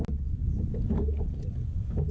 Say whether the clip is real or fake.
real